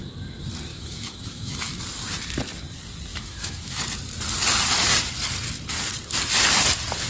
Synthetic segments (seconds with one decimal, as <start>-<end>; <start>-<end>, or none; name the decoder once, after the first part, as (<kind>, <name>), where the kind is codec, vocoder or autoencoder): 0.7-1.8 (autoencoder, DAC-VAE); 3.1-3.8